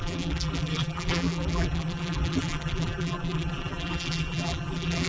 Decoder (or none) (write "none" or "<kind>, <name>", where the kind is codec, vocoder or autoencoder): vocoder, BigVGAN v2